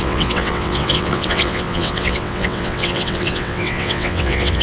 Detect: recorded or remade remade